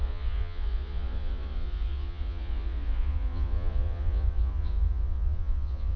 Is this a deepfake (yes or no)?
yes